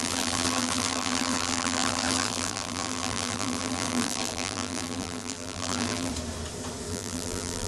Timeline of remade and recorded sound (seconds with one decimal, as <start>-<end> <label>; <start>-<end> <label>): 0.0-6.1 remade; 6.1-6.9 recorded; 6.9-7.7 remade